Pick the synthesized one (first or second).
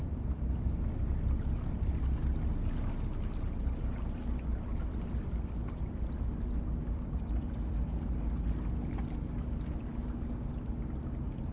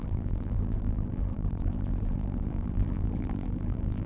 second